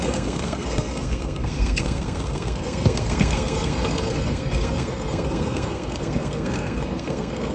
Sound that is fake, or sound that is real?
fake